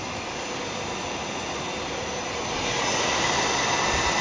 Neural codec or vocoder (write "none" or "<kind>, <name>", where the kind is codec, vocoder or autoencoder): none